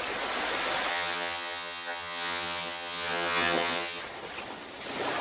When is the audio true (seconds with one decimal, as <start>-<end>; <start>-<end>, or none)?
0.0-0.9; 4.0-5.2